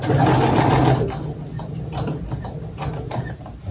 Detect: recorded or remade recorded